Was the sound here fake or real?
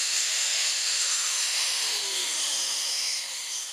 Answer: fake